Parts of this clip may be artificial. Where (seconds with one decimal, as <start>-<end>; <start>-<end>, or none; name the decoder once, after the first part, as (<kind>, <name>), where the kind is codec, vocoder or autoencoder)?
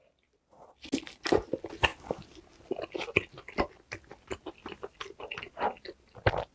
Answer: none